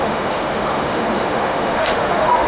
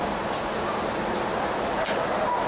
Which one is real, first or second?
second